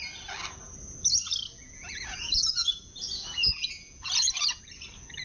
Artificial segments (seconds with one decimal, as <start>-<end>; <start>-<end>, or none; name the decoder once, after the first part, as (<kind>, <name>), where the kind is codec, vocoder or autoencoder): 1.5-4.6 (vocoder, Vocos)